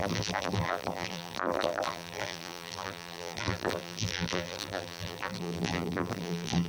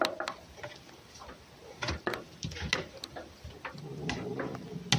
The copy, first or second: first